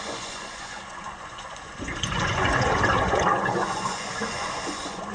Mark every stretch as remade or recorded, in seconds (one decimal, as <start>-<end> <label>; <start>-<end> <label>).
0.0-5.1 remade